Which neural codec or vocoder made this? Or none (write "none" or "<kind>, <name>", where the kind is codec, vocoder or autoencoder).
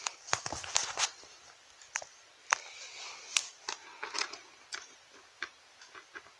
vocoder, BigVGAN v2